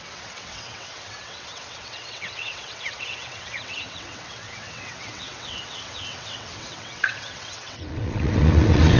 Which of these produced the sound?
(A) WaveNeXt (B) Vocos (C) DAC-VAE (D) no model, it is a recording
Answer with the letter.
A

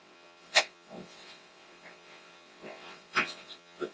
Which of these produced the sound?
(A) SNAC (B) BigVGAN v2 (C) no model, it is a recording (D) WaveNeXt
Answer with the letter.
D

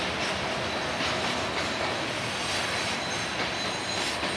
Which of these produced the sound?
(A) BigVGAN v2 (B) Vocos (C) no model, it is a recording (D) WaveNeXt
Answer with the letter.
C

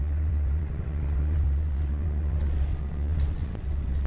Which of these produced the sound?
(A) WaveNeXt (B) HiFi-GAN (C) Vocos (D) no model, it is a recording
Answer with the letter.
A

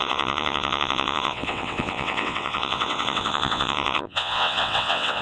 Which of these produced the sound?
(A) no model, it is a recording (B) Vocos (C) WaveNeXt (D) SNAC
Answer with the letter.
C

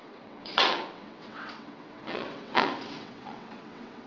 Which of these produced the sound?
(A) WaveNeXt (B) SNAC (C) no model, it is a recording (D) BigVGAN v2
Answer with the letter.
A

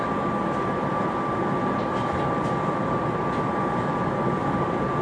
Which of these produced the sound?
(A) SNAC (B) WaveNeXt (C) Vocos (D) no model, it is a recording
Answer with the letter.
D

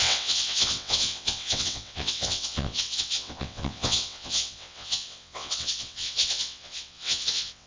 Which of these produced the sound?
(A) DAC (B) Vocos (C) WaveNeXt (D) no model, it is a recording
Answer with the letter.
C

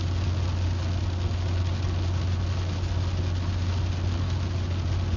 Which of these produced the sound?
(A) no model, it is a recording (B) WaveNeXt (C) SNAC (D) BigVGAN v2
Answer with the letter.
A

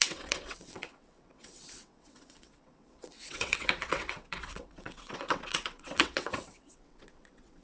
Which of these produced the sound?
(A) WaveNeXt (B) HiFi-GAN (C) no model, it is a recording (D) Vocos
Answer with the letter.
A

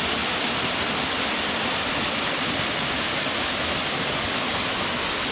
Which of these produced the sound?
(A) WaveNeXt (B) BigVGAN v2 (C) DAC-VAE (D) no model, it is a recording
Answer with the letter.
D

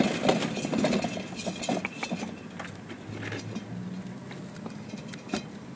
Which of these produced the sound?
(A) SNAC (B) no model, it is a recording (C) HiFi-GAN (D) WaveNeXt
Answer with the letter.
B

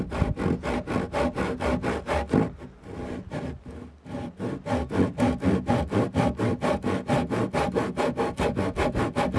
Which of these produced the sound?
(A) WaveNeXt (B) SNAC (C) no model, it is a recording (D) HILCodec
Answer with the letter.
C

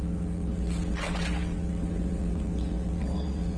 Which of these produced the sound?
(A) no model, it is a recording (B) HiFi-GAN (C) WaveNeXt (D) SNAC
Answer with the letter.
C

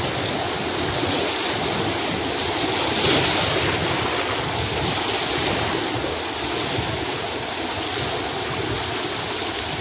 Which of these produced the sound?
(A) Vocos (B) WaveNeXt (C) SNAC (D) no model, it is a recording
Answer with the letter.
D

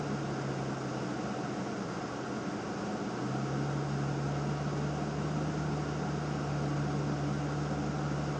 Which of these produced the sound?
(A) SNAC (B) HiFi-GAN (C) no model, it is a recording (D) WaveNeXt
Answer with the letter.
C